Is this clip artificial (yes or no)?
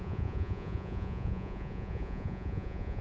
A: yes